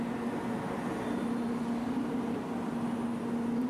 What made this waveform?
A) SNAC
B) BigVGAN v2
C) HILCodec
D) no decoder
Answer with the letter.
D